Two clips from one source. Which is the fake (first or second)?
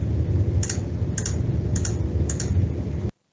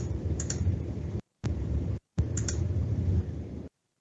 second